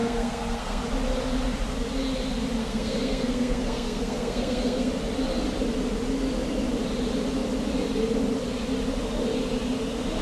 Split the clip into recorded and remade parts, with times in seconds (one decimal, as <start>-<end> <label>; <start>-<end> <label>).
0.0-0.8 remade; 0.8-2.6 recorded; 2.6-4.9 remade; 4.9-10.2 recorded